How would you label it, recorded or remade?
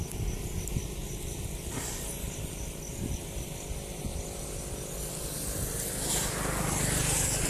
recorded